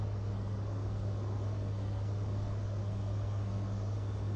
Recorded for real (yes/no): no